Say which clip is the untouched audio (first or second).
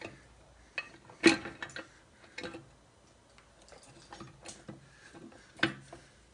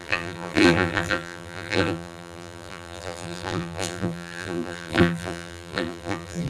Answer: first